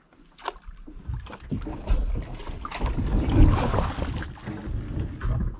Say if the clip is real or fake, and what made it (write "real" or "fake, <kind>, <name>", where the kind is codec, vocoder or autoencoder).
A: real